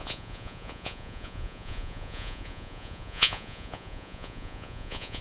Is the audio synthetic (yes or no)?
yes